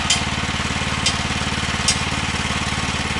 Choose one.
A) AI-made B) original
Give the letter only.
B